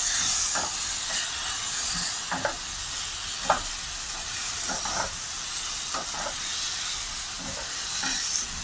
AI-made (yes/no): no